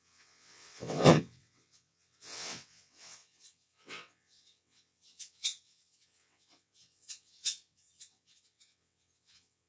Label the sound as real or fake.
fake